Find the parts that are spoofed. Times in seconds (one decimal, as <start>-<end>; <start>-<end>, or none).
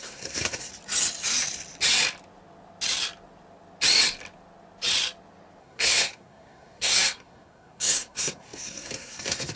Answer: 0.0-0.7; 5.6-9.6